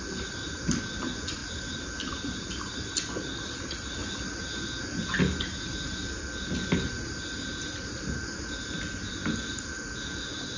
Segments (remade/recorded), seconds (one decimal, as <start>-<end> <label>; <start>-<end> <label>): 0.0-10.6 recorded